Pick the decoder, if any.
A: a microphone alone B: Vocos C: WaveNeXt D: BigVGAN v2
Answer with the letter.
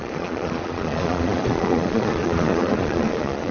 B